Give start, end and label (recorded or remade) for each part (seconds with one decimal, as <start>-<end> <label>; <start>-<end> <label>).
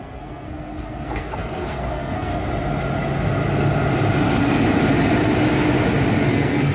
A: 0.0-2.3 remade; 2.3-6.3 recorded; 6.3-6.7 remade